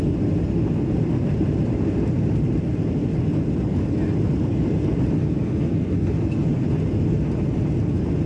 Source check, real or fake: real